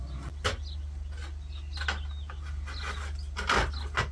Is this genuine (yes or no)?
yes